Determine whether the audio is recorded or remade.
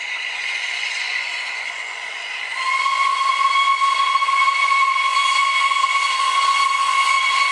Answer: remade